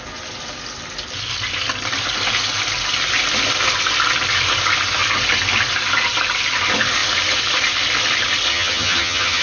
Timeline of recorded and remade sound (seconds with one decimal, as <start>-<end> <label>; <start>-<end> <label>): 0.0-8.5 recorded; 8.5-9.4 remade